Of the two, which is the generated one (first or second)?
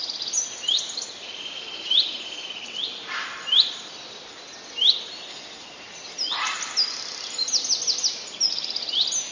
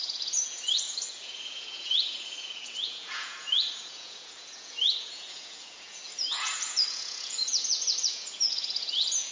second